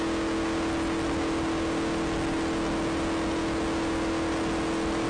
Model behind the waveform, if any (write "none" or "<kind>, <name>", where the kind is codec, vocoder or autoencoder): none